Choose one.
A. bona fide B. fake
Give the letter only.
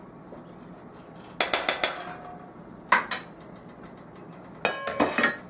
A